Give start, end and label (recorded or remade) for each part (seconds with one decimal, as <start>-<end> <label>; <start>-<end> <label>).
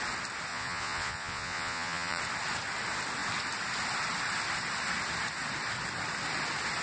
0.0-0.5 recorded; 0.5-2.2 remade; 2.2-6.8 recorded